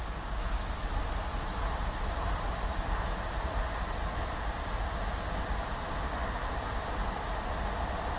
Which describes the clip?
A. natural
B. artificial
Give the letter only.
A